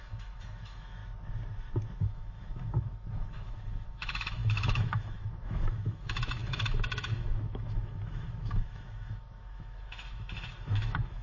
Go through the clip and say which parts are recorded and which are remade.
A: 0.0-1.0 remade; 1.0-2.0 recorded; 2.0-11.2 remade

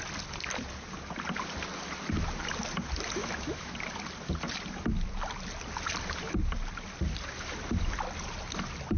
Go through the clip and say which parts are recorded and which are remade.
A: 0.0-3.2 recorded; 3.2-3.7 remade; 3.7-9.0 recorded